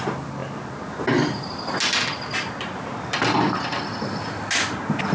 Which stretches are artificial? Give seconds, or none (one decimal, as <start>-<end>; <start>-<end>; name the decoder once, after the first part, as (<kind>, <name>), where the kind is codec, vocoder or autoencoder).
none